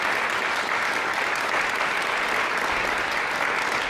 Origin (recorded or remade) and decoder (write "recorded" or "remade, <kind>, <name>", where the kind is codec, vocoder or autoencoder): recorded